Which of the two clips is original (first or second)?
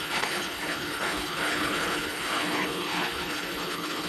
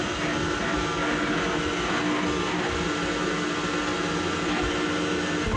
second